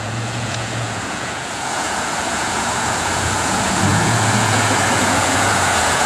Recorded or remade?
remade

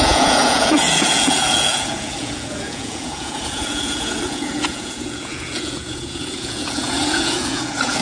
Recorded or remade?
remade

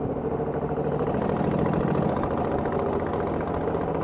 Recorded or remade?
recorded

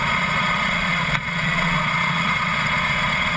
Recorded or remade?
remade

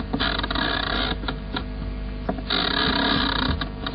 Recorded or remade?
recorded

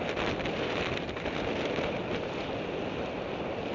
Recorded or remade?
recorded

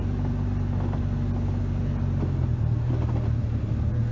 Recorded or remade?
recorded